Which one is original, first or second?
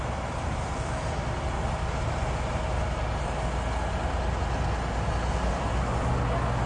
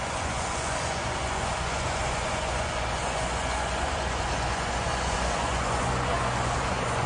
first